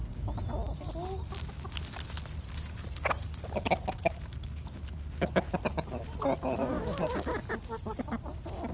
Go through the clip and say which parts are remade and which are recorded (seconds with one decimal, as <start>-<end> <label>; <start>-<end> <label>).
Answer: 0.0-8.7 recorded